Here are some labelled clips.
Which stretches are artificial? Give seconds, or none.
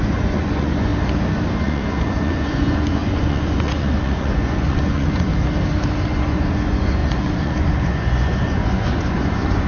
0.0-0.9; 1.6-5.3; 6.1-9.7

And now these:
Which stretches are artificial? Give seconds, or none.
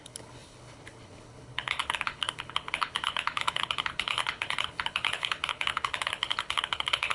0.0-7.1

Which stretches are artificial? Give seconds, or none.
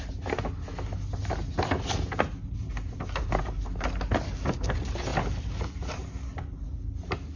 5.1-6.1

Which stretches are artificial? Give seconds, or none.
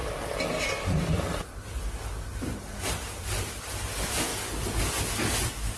0.0-3.5; 4.3-5.0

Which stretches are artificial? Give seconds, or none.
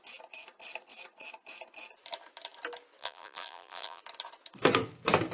3.0-4.0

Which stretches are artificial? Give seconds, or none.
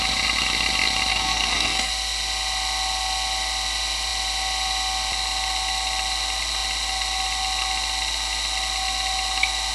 1.1-1.9